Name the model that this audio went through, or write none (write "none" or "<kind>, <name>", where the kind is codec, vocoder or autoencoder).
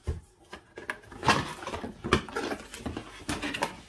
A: none